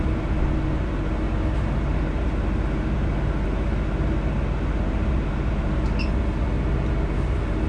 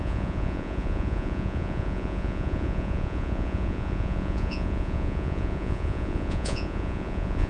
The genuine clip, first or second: first